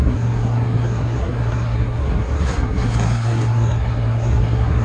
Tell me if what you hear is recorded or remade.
remade